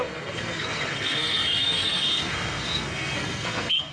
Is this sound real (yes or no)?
no